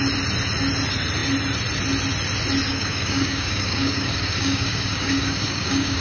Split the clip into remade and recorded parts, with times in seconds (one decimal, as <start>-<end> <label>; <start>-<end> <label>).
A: 0.0-2.7 recorded; 2.7-6.0 remade